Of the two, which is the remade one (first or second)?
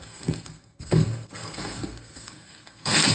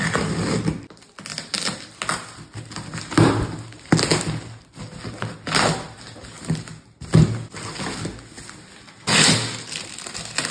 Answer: first